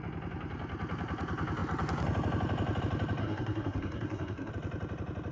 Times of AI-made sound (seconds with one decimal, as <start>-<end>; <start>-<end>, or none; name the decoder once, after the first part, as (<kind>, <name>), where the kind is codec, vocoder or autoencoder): 3.2-4.5 (codec, SNAC)